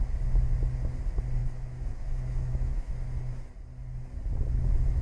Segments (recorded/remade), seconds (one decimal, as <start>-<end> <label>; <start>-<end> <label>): 0.0-1.4 recorded; 1.4-2.9 remade; 2.9-5.0 recorded